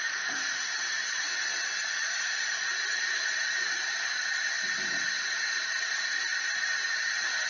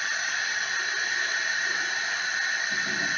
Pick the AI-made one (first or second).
first